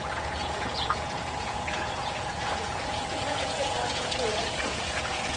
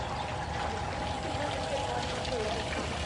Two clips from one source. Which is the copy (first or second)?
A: first